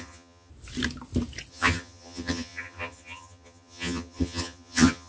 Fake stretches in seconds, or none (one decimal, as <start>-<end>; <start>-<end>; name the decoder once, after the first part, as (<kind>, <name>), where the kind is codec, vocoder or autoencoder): 0.0-0.5 (vocoder, HiFi-GAN); 1.5-5.1